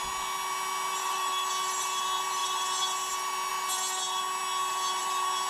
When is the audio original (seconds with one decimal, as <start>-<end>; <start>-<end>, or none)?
0.0-1.0; 1.5-5.5